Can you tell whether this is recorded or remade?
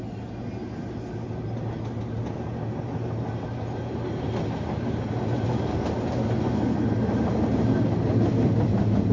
recorded